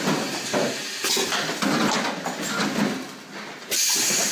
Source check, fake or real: real